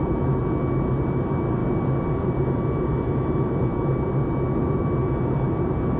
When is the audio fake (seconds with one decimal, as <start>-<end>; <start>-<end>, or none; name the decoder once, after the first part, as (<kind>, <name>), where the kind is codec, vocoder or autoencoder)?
0.0-0.4 (vocoder, BigVGAN v2); 0.9-6.0